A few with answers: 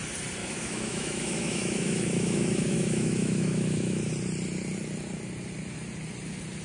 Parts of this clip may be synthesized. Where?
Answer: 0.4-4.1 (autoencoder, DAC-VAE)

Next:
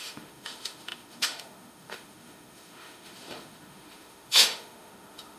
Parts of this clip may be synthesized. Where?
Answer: 0.0-5.4 (autoencoder, DAC-VAE)

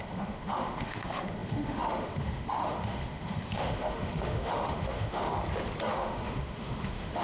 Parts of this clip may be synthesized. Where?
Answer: 0.0-5.3 (autoencoder, DAC-VAE); 5.9-7.2

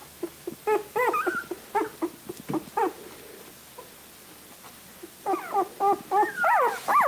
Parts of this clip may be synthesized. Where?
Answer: 0.0-0.6 (autoencoder, DAC-VAE)

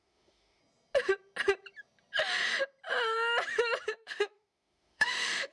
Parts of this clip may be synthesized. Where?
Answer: 0.0-0.6 (autoencoder, DAC-VAE); 3.9-5.5

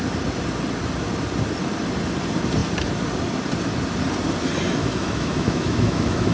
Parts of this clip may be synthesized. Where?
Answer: 4.8-6.3 (autoencoder, DAC-VAE)

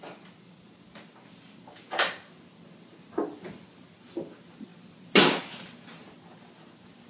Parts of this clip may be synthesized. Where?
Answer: none

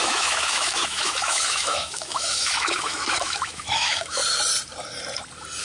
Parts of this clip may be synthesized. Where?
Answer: 0.0-4.2 (autoencoder, DAC-VAE)